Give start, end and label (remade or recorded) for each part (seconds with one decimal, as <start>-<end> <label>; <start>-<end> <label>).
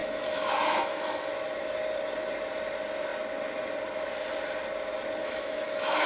0.0-1.3 remade; 1.3-5.2 recorded; 5.2-6.1 remade